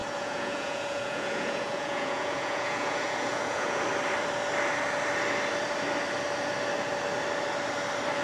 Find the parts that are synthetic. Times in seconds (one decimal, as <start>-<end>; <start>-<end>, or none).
0.0-3.8